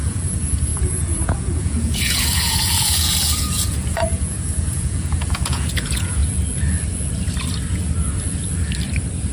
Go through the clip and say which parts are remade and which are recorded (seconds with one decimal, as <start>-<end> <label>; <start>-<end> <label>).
0.0-6.2 remade; 6.2-9.3 recorded